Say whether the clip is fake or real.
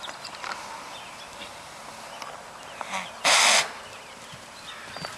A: real